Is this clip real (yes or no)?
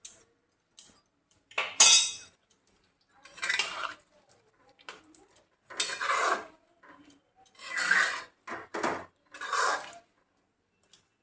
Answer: yes